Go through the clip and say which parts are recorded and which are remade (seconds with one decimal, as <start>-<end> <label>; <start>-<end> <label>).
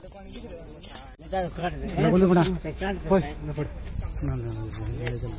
0.0-1.6 recorded; 1.6-3.9 remade; 3.9-5.4 recorded